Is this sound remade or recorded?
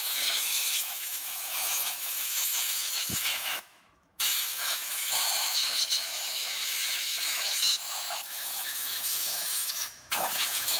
remade